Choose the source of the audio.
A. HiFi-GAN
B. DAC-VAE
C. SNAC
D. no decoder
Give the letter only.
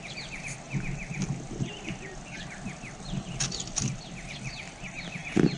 D